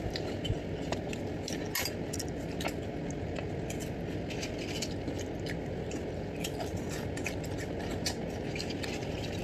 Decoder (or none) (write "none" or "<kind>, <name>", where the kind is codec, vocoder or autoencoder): none